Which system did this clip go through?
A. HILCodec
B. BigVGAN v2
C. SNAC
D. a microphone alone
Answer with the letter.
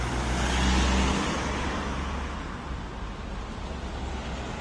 D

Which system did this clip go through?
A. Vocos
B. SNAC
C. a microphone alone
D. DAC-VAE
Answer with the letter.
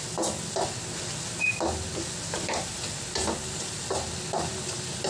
C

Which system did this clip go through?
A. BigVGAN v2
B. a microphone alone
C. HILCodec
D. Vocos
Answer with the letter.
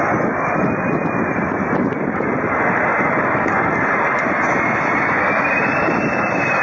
B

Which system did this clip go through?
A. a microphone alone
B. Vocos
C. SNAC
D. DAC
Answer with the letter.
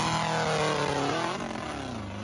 A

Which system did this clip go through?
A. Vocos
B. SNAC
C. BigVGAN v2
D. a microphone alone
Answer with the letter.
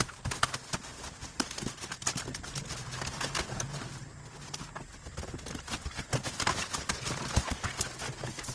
D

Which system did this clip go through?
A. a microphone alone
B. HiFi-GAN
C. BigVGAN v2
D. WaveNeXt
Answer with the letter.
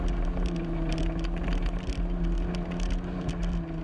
A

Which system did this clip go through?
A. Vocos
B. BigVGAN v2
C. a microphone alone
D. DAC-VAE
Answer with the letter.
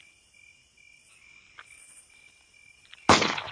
C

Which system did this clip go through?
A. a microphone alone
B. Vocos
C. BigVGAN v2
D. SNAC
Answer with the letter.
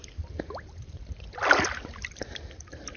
A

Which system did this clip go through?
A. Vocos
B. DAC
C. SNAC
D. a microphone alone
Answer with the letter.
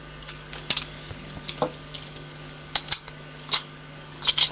B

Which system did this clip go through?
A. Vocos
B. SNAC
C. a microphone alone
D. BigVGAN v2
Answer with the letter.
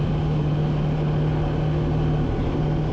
C